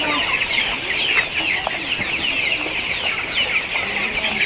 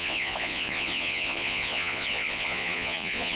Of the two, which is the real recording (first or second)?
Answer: first